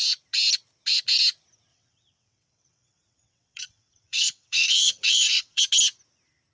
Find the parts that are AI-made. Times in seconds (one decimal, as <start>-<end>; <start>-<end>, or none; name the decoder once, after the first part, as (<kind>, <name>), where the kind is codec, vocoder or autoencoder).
1.7-5.6 (vocoder, WaveNeXt)